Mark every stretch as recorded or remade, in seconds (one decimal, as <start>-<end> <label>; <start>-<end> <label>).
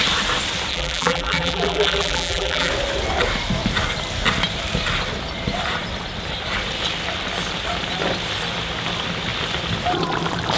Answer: 0.0-0.7 recorded; 0.7-2.7 remade; 2.7-10.6 recorded